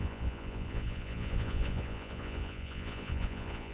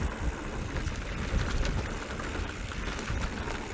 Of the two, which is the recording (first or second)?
second